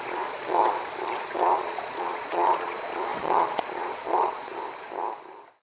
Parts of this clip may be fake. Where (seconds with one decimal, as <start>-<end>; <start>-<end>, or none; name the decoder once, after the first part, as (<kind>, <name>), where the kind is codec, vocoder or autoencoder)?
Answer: 0.0-0.6 (vocoder, Vocos); 1.2-4.5

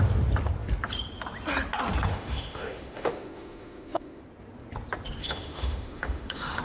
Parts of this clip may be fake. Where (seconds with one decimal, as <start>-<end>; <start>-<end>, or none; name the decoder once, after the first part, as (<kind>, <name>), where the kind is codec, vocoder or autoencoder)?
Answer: 2.1-4.2 (autoencoder, DAC-VAE); 5.2-6.6

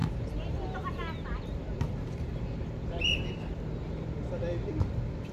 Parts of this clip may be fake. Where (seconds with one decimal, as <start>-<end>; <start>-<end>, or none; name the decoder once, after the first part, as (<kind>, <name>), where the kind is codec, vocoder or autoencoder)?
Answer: 0.0-3.2 (vocoder, BigVGAN v2)

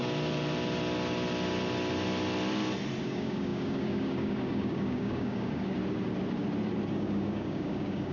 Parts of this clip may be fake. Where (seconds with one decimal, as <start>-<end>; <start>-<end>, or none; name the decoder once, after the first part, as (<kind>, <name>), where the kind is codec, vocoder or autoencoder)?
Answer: 3.0-5.8 (codec, DAC); 6.9-8.1

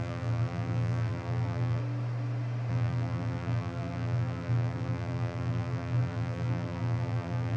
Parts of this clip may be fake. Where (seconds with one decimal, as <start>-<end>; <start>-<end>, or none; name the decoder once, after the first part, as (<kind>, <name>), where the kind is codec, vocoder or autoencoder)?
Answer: 0.0-1.8 (vocoder, BigVGAN v2); 2.7-7.6

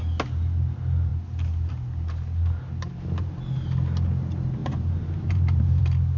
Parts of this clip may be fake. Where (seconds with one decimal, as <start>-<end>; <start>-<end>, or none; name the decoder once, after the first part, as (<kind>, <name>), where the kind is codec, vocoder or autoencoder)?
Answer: 4.6-5.8 (vocoder, BigVGAN v2)